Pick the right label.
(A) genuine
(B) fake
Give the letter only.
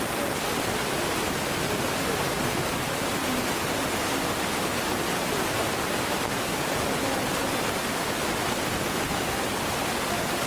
A